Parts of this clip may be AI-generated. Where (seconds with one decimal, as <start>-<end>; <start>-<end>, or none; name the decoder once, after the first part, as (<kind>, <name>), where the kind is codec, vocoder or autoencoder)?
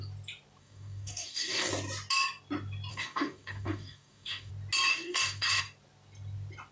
0.6-1.7 (codec, DAC); 2.9-4.5; 4.9-5.6